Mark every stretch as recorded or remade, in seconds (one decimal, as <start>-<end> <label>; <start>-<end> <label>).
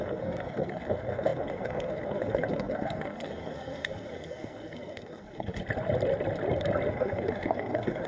0.0-5.6 remade; 5.6-6.9 recorded; 6.9-8.1 remade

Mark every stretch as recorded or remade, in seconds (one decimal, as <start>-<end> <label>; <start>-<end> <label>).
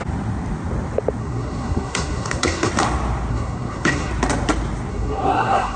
0.0-1.2 recorded; 1.2-2.7 remade; 2.7-3.3 recorded; 3.3-4.1 remade; 4.1-4.9 recorded; 4.9-5.8 remade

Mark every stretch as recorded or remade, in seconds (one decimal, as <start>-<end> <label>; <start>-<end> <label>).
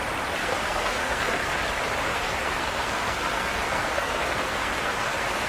0.0-0.4 recorded; 0.4-1.6 remade; 1.6-2.1 recorded; 2.1-5.5 remade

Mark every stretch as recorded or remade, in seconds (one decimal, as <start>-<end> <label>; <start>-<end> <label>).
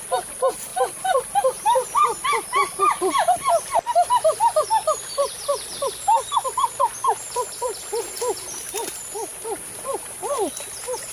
0.0-0.7 recorded; 0.7-3.5 remade; 3.5-11.1 recorded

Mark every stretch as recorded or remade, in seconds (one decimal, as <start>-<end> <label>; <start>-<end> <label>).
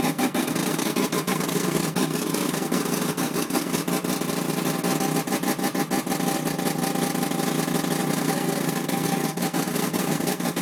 0.0-3.8 remade; 3.8-8.1 recorded; 8.1-10.6 remade